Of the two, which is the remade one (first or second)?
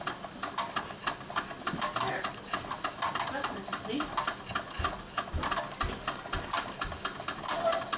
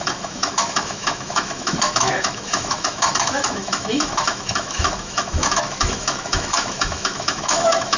second